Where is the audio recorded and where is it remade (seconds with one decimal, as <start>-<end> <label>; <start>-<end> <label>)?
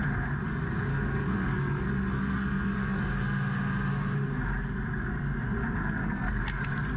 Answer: 0.0-0.9 recorded; 0.9-3.0 remade; 3.0-5.8 recorded; 5.8-6.4 remade; 6.4-7.0 recorded